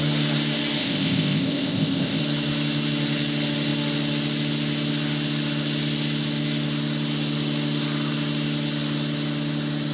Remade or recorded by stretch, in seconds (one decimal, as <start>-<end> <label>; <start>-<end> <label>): 0.0-0.8 recorded; 0.8-2.2 remade; 2.2-9.9 recorded